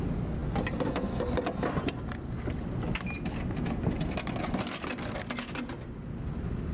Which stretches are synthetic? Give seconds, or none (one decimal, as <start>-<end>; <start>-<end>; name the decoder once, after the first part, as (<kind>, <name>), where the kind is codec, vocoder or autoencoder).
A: none